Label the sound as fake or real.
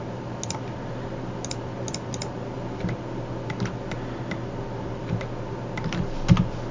real